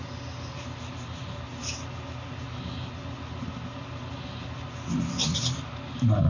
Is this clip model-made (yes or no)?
no